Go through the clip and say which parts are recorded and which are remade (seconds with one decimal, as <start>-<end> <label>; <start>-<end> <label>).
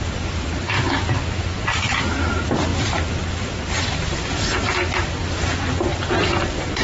0.0-6.8 recorded